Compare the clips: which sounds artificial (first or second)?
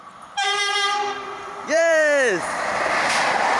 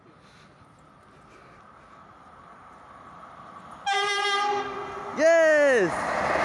first